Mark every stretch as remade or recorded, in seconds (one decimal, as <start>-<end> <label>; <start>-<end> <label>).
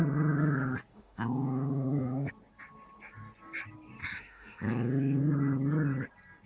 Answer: 0.0-0.9 recorded; 0.9-2.3 remade; 2.3-4.0 recorded; 4.0-5.2 remade; 5.2-6.5 recorded